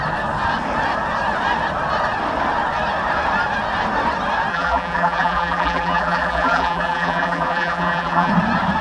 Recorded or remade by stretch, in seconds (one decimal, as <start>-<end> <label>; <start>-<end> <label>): 0.0-4.5 recorded; 4.5-8.3 remade; 8.3-8.8 recorded

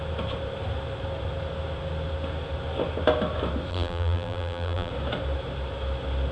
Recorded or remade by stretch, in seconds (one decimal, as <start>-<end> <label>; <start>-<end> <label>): 0.0-3.7 recorded; 3.7-4.9 remade; 4.9-6.3 recorded

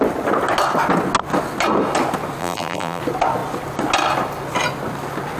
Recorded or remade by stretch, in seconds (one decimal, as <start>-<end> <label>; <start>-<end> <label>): 0.0-2.4 recorded; 2.4-3.0 remade; 3.0-5.4 recorded

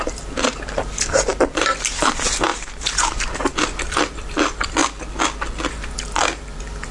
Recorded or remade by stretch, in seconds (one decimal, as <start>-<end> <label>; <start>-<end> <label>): 0.0-4.8 remade; 4.8-5.7 recorded; 5.7-6.9 remade